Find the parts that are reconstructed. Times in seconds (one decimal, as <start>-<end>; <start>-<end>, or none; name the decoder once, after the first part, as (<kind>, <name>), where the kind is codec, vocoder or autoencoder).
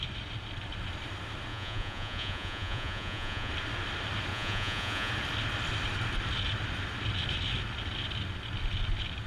1.5-3.5 (vocoder, Vocos); 4.3-5.1